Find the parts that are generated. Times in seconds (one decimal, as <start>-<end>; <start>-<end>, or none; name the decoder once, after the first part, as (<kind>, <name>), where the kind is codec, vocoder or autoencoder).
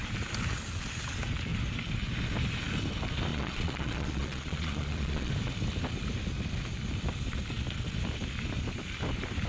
3.3-5.3 (vocoder, Vocos)